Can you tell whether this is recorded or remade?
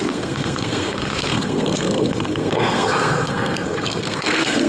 remade